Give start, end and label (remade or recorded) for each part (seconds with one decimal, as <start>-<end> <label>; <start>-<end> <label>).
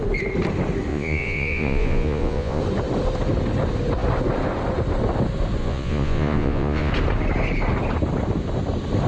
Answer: 0.0-0.9 recorded; 0.9-2.6 remade; 2.6-5.6 recorded; 5.6-6.9 remade; 6.9-9.1 recorded